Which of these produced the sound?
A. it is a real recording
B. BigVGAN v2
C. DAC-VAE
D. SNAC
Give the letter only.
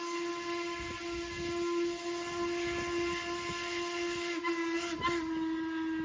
A